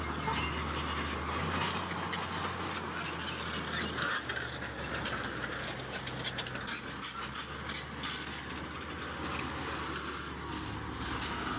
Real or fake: real